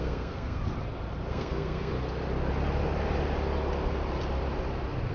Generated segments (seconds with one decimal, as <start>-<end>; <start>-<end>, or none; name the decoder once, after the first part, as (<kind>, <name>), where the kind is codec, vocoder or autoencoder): 0.0-0.6 (codec, SNAC); 1.3-1.9